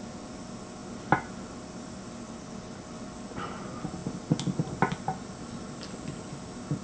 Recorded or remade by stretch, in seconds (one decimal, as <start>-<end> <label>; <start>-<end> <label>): 0.0-6.8 recorded